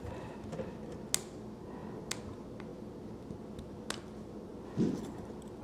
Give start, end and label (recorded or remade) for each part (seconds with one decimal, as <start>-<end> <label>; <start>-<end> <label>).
0.0-5.6 recorded

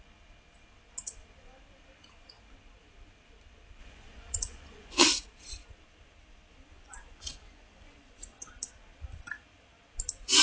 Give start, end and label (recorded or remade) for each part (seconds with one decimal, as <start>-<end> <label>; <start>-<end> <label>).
0.0-3.8 recorded; 3.8-5.0 remade; 5.0-6.7 recorded; 6.7-8.5 remade; 8.5-10.4 recorded

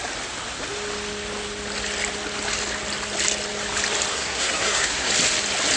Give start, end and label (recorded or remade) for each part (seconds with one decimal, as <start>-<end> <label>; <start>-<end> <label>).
0.0-4.1 recorded; 4.1-5.1 remade; 5.1-5.8 recorded

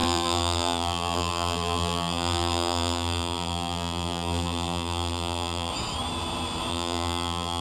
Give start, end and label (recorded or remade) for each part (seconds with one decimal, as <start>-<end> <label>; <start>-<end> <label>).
0.0-5.7 remade; 5.7-6.7 recorded; 6.7-7.6 remade

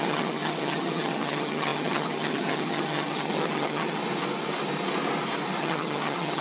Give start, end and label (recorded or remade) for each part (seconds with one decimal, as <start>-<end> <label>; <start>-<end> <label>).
0.0-4.0 remade; 4.0-5.6 recorded; 5.6-6.4 remade